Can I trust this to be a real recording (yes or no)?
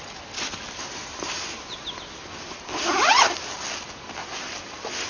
yes